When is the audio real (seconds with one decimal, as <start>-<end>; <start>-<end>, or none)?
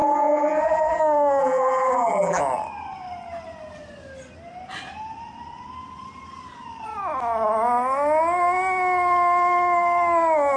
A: 1.0-1.4; 2.4-10.6